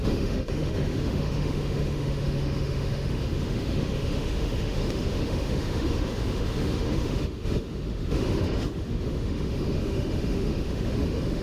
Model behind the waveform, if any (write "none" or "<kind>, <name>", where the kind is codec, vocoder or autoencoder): autoencoder, DAC-VAE